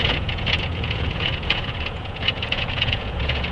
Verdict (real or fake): fake